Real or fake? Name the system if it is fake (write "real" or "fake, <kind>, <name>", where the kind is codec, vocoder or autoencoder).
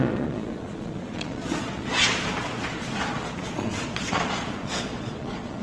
fake, vocoder, Vocos